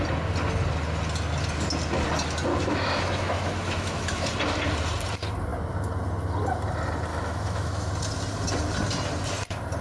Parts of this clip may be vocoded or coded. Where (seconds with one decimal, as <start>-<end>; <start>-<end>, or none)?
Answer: 2.5-4.3; 7.1-7.9